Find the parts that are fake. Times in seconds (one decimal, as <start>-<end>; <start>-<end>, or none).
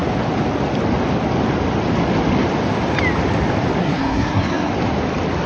3.8-4.7